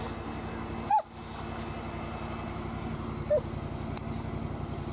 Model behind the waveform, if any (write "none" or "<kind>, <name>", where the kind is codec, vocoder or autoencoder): none